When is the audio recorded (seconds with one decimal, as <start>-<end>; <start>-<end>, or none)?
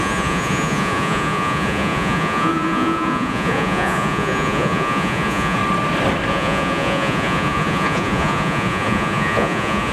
5.6-6.3